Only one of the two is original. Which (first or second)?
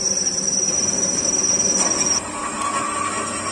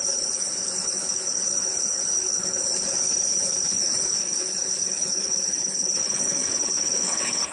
first